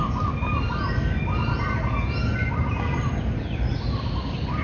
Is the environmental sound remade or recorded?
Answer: recorded